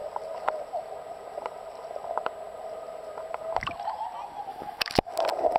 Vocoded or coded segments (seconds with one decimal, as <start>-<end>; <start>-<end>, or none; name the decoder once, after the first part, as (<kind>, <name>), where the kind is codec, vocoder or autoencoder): 4.5-5.1 (autoencoder, DAC-VAE)